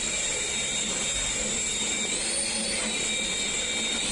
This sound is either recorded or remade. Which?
recorded